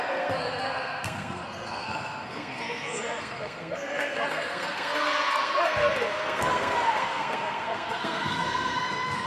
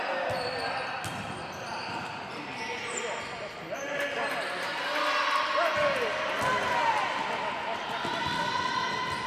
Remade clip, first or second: first